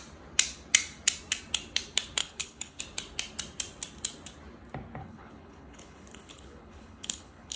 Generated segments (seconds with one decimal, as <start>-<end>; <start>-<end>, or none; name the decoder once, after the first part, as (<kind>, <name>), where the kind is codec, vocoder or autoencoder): 2.2-2.8 (codec, HILCodec); 5.0-7.6